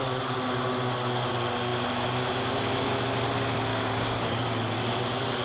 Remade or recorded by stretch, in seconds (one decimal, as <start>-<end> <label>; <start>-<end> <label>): 0.0-3.7 recorded; 3.7-4.6 remade; 4.6-5.4 recorded